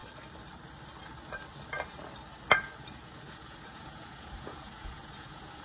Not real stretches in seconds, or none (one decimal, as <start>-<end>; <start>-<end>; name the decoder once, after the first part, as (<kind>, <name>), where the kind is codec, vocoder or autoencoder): 2.9-5.6 (vocoder, Vocos)